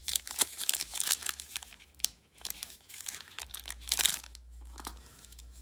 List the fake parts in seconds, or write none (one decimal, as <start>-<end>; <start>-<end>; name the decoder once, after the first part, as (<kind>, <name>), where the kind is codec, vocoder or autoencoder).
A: 0.0-5.6 (autoencoder, DAC-VAE)